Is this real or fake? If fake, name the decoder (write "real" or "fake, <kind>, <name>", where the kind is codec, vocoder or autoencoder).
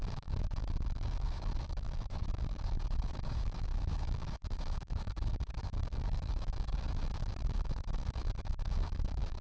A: fake, codec, DAC